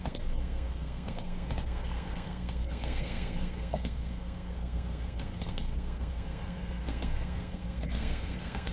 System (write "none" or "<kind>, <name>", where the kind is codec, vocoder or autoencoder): codec, SNAC